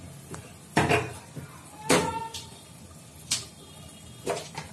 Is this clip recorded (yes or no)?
yes